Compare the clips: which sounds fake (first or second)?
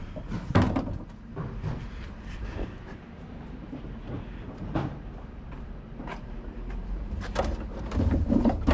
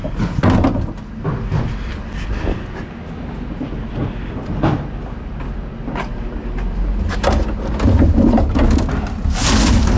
first